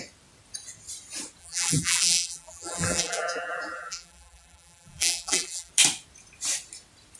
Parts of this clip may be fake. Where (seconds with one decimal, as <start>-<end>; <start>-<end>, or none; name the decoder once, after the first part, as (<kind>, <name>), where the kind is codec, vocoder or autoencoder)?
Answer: 1.4-5.7 (vocoder, BigVGAN v2)

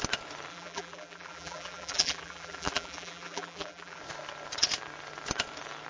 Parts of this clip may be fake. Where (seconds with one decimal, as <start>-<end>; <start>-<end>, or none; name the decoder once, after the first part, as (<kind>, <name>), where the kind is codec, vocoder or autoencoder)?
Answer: 0.5-4.0 (vocoder, BigVGAN v2)

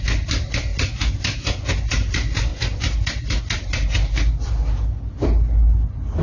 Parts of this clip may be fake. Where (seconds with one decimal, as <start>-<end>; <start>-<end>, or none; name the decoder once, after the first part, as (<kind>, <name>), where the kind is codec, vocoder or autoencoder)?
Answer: none

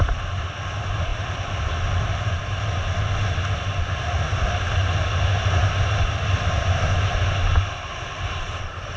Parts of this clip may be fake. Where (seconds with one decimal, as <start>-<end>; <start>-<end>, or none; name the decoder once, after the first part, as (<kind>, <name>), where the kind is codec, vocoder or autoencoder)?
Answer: 1.1-2.3 (vocoder, BigVGAN v2)